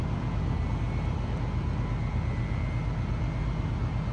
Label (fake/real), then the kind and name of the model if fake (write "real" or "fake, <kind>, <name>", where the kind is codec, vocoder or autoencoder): real